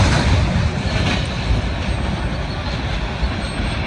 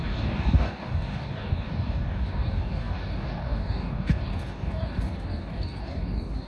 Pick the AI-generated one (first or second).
second